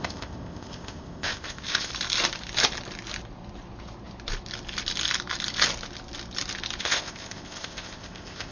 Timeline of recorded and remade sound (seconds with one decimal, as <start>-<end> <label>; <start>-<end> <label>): 0.0-1.9 remade; 1.9-6.8 recorded; 6.8-8.5 remade